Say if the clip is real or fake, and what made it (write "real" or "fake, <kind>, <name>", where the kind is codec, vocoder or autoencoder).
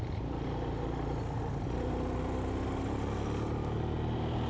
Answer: real